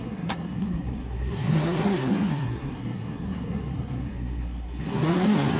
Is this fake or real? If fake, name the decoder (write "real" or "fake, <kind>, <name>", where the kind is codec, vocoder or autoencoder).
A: fake, codec, SNAC